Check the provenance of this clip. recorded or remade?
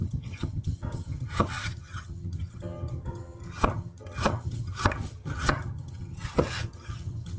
remade